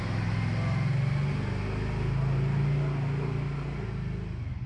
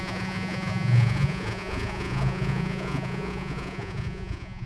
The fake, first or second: second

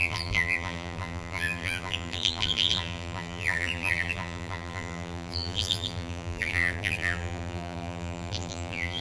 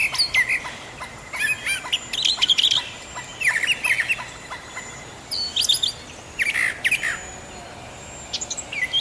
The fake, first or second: first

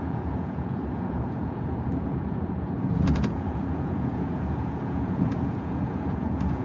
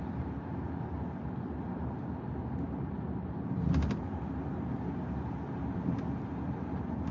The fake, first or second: first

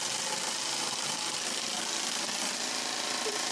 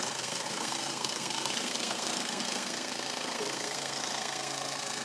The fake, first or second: second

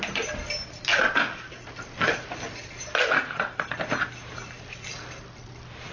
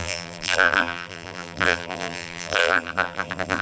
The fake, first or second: second